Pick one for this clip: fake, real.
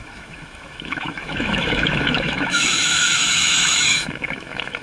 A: fake